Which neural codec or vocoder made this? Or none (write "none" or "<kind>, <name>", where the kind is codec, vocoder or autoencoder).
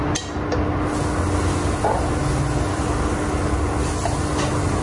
none